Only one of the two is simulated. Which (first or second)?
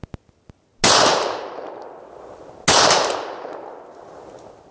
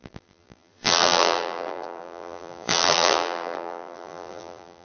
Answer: second